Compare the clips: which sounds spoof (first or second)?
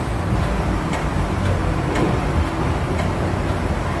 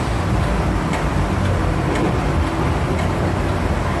second